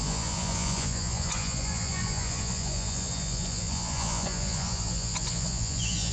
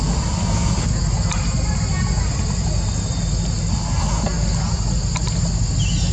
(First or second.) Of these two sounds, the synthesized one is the first